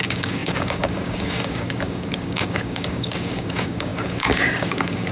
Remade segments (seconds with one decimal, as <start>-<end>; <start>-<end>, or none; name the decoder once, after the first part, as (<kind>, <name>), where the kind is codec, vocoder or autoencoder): 0.0-5.1 (codec, DAC)